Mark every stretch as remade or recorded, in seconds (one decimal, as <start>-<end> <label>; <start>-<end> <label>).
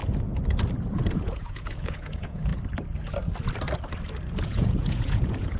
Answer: 0.0-1.1 recorded; 1.1-2.5 remade; 2.5-4.4 recorded; 4.4-5.6 remade